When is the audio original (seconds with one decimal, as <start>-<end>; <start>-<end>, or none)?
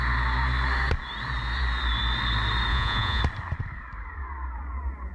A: 0.0-2.7; 3.2-5.1